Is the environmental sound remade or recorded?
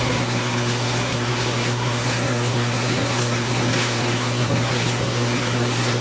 remade